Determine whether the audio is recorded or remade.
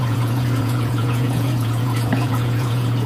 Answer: remade